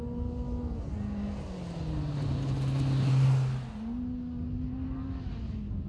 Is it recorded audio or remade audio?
recorded